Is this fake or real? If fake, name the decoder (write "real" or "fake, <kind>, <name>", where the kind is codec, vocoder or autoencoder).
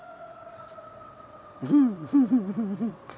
fake, vocoder, WaveNeXt